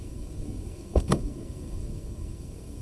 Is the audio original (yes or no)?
no